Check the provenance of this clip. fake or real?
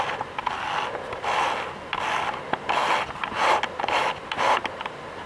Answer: real